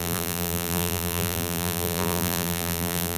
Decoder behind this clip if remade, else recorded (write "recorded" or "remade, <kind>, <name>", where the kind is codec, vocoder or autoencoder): remade, vocoder, BigVGAN v2